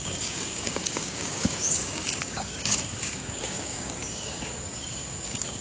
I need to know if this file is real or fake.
fake